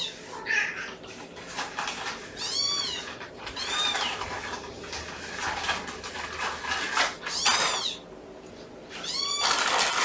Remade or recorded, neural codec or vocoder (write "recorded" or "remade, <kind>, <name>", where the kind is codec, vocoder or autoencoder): recorded